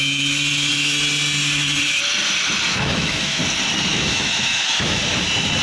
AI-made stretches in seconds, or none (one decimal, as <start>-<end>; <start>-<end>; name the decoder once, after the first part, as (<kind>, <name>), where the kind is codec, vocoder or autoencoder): 2.7-3.4 (autoencoder, DAC-VAE); 3.9-5.0